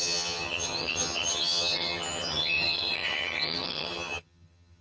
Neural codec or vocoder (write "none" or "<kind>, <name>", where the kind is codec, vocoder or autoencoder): vocoder, HiFi-GAN